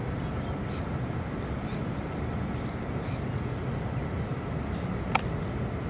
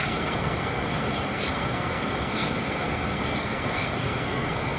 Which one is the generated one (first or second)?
second